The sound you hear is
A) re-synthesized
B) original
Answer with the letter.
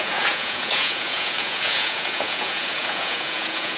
A